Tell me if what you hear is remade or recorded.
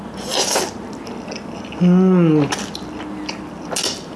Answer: recorded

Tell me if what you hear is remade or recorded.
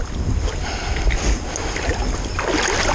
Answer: recorded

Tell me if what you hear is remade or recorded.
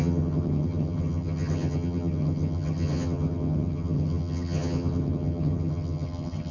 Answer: remade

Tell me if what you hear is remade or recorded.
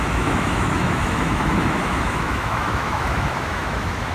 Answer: remade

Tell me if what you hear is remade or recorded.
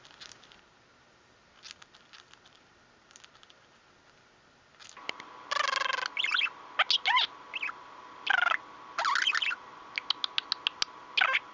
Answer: recorded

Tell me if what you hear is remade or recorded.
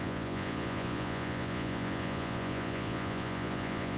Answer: remade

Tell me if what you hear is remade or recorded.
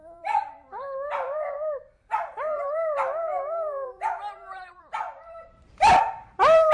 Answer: remade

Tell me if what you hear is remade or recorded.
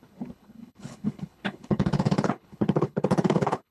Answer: remade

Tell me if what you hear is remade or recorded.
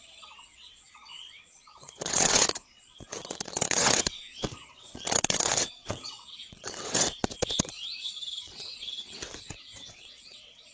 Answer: remade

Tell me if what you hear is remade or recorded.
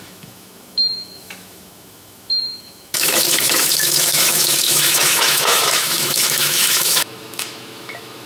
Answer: remade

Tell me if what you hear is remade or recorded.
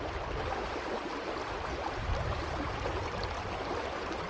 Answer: recorded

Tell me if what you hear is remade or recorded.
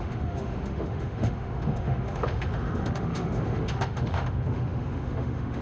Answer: remade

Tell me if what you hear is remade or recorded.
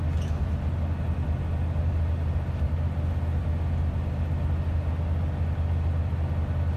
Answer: recorded